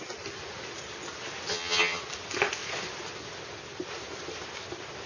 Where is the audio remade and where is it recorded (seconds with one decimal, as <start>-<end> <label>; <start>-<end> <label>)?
0.0-1.5 recorded; 1.5-2.0 remade; 2.0-5.1 recorded